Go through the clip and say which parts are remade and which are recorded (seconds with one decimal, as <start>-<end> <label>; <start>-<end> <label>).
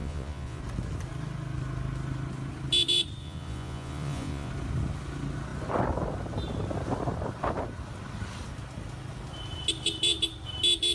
0.0-0.6 remade; 0.6-3.2 recorded; 3.2-4.5 remade; 4.5-10.9 recorded